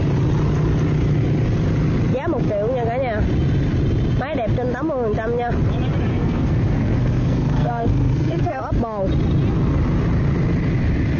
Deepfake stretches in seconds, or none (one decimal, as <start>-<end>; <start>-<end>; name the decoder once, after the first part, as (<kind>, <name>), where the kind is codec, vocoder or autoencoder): 6.1-8.6 (codec, SNAC)